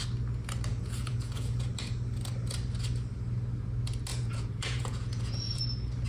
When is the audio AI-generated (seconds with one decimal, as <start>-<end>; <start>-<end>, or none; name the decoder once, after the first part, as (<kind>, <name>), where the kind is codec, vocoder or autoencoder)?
0.7-1.7 (vocoder, Vocos); 4.1-5.6